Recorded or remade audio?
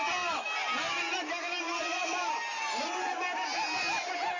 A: recorded